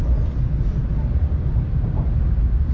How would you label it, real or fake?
real